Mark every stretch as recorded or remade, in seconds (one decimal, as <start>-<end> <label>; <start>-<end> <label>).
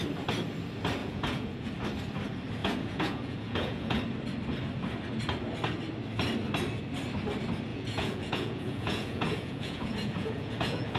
0.0-1.0 recorded; 1.0-1.7 remade; 1.7-2.6 recorded; 2.6-4.0 remade; 4.0-7.7 recorded; 7.7-11.0 remade